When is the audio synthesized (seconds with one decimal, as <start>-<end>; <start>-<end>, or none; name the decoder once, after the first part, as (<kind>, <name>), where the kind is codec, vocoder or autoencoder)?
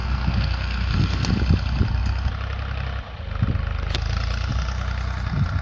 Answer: 0.0-1.3 (codec, SNAC)